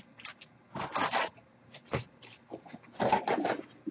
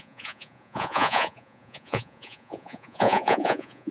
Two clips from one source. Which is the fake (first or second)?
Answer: second